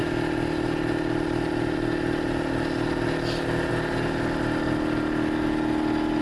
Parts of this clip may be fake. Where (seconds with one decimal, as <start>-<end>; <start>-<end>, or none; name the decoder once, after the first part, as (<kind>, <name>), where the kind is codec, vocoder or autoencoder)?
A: none

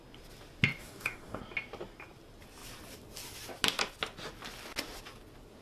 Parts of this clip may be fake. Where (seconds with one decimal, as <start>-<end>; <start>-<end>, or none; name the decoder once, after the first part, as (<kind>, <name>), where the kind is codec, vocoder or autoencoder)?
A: 0.8-1.4 (codec, DAC)

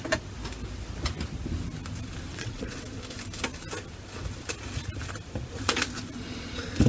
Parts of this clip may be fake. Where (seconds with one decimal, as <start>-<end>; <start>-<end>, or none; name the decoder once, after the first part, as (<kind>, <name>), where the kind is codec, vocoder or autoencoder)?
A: 2.3-2.8 (vocoder, WaveNeXt)

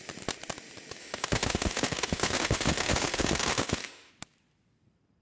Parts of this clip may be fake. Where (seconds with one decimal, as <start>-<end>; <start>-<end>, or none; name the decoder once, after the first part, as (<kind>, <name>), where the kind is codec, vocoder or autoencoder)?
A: 1.0-4.1 (autoencoder, DAC-VAE)

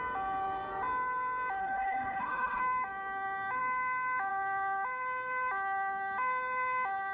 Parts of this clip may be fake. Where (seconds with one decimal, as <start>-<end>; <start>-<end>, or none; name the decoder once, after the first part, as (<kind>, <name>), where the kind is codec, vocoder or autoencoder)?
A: 1.6-2.6 (codec, HILCodec)

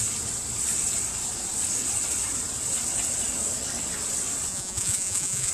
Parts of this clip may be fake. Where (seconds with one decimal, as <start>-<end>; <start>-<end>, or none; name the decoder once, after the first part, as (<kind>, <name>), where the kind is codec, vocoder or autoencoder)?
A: 4.5-5.5 (vocoder, Vocos)